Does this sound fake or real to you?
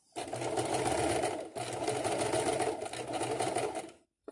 real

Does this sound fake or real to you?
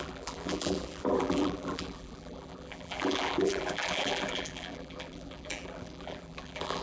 fake